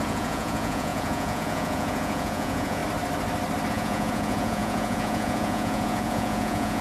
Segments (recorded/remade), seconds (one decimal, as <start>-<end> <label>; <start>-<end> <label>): 0.0-2.8 remade; 2.8-3.7 recorded; 3.7-6.8 remade